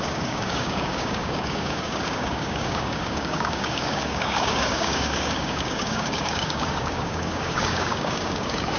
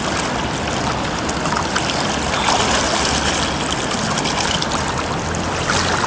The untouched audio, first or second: second